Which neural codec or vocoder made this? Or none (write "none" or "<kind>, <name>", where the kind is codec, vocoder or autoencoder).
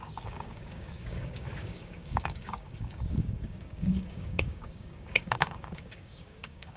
codec, DAC